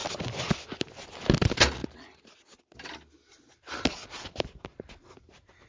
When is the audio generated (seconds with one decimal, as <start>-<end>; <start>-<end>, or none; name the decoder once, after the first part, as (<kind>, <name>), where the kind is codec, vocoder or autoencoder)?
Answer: 0.0-0.5 (vocoder, BigVGAN v2)